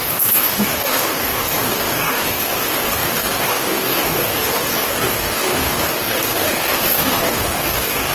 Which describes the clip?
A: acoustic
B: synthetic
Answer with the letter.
B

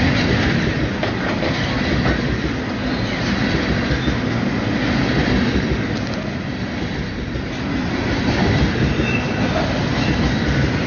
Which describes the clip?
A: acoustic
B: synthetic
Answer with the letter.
A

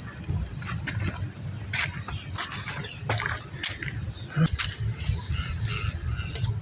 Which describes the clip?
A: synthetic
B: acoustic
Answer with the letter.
B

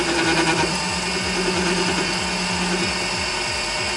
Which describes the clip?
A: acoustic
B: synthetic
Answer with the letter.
A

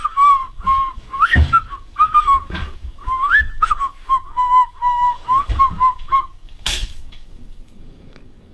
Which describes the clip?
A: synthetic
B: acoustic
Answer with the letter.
A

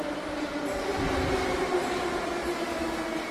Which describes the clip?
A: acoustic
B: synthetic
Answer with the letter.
A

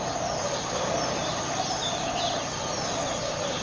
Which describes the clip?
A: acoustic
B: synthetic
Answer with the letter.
A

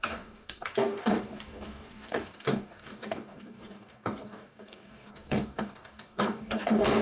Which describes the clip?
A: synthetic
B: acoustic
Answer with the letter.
A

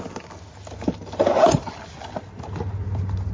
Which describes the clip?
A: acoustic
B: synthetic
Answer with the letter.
A